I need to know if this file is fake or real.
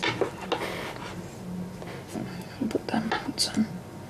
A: real